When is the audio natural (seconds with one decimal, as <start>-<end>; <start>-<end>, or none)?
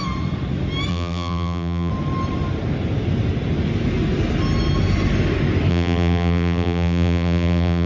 0.0-0.9; 1.9-5.7